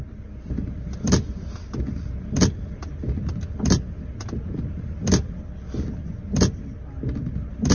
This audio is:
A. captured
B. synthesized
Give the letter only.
A